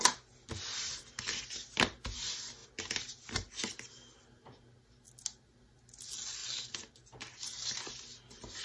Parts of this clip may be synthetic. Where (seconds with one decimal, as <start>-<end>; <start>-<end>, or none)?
none